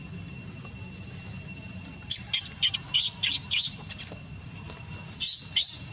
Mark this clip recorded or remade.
recorded